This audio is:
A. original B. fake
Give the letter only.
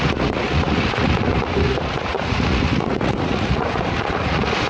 B